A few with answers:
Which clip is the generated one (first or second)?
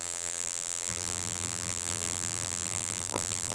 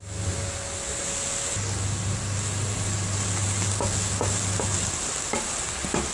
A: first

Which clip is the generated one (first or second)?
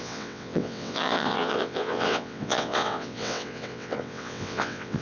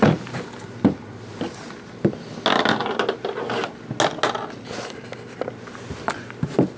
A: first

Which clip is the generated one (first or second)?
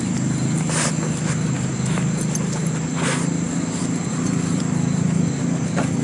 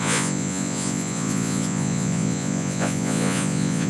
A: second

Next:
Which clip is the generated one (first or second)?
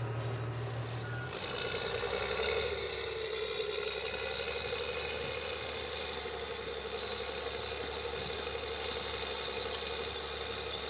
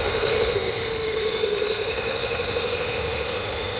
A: second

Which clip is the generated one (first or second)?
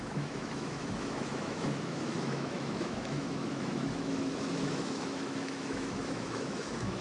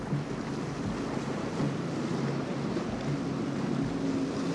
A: first